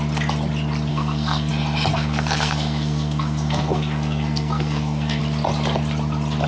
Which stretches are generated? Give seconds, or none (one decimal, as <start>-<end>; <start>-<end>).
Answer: 0.9-1.5; 1.9-5.2